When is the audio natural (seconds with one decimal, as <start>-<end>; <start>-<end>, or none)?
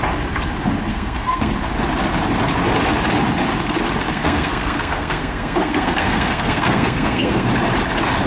0.0-0.9; 1.5-4.1; 7.5-8.3